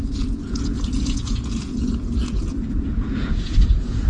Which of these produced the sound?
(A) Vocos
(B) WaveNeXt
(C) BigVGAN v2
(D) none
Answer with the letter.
A